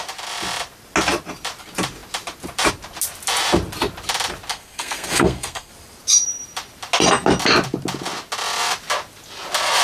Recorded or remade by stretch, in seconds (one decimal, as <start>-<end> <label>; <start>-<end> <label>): 0.0-4.5 recorded; 4.5-5.7 remade; 5.7-9.8 recorded

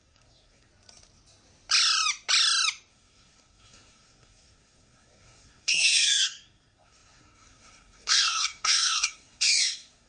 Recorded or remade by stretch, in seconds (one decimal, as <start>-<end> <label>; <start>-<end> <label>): 0.0-0.7 remade; 0.7-2.9 recorded; 2.9-10.1 remade